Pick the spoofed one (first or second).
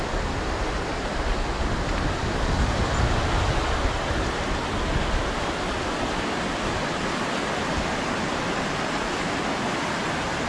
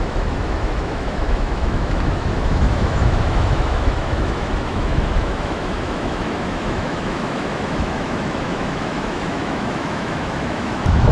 second